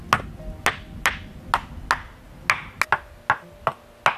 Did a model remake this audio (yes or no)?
no